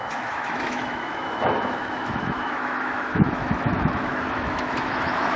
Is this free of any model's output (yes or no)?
no